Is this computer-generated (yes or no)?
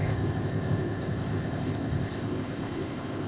yes